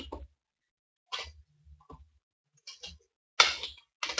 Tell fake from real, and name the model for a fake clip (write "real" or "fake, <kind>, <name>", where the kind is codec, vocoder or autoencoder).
real